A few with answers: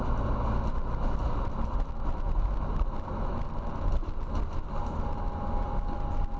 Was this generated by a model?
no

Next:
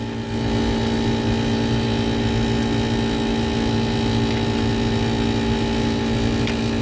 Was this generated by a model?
no